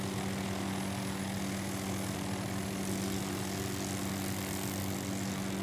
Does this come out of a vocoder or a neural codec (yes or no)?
no